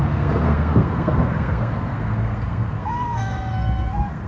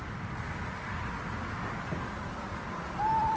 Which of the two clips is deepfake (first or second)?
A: first